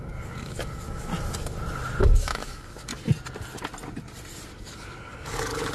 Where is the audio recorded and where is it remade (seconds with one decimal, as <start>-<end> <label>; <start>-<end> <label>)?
0.0-1.1 remade; 1.1-2.0 recorded; 2.0-2.9 remade; 2.9-4.5 recorded; 4.5-5.7 remade